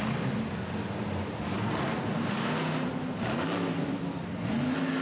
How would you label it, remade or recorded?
recorded